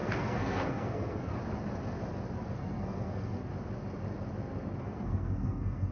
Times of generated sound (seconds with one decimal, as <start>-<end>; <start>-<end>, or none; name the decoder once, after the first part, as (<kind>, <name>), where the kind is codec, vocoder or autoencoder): 0.0-1.3 (codec, SNAC); 2.5-3.5; 4.8-5.9